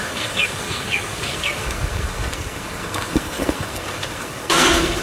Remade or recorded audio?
remade